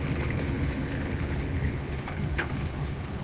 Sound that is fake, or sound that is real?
fake